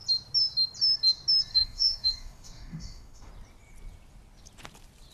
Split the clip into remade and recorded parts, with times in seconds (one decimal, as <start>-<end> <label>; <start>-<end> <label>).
0.0-1.5 recorded; 1.5-3.3 remade; 3.3-5.1 recorded